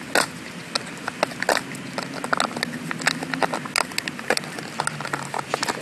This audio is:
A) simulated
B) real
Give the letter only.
B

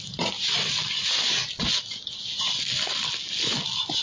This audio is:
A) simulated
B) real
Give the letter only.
B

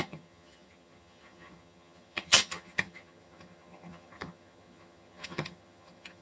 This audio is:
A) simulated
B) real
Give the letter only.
A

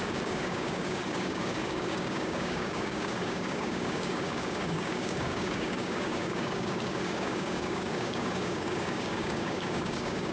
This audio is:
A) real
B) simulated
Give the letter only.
B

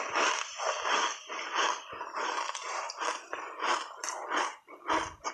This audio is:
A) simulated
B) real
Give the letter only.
B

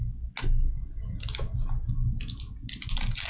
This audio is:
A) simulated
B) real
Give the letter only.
B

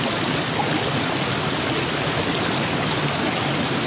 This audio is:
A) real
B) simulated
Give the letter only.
A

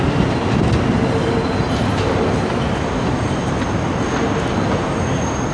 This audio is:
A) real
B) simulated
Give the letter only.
A